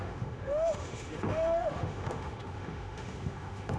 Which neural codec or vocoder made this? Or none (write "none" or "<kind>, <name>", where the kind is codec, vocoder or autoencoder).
autoencoder, DAC-VAE